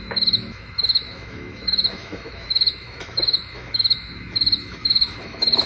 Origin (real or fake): fake